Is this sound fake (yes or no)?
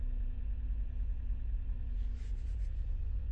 yes